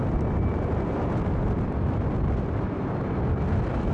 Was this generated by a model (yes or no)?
no